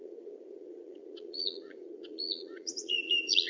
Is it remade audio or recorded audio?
remade